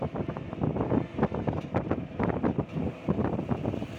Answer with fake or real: real